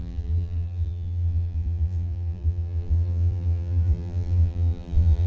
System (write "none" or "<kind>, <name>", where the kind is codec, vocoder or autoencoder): vocoder, BigVGAN v2